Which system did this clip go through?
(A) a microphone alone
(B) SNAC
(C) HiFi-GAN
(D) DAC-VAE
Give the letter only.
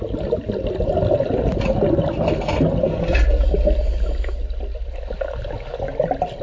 A